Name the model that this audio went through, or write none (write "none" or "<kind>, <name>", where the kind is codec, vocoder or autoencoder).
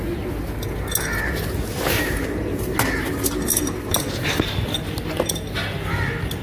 none